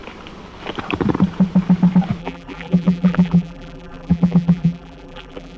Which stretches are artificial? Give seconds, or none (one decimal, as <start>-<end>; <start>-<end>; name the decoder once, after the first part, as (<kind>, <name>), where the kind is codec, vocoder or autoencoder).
2.2-5.6 (vocoder, BigVGAN v2)